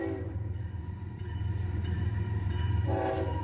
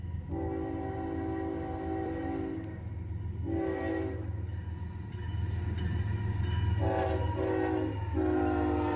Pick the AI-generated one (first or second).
first